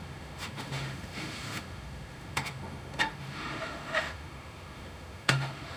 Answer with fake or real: fake